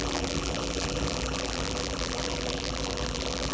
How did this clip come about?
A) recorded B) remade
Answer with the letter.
B